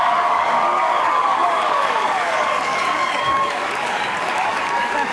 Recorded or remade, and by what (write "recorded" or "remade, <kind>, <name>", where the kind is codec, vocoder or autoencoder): remade, codec, DAC